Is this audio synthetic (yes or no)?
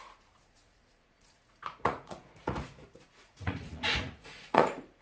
yes